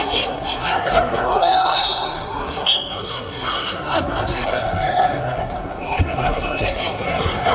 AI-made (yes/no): yes